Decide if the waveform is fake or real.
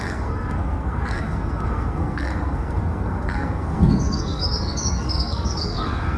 fake